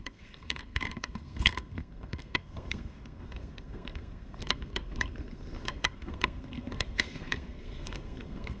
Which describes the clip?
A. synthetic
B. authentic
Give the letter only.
A